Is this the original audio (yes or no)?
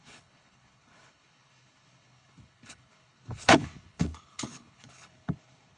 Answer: no